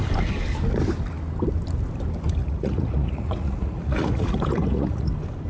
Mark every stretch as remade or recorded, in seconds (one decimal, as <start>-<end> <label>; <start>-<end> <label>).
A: 0.0-2.4 recorded; 2.4-5.1 remade; 5.1-5.5 recorded